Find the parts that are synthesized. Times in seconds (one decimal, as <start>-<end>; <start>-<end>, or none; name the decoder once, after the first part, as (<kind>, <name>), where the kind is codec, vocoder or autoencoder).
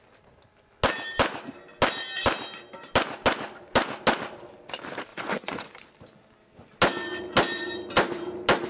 5.1-5.7 (vocoder, Vocos)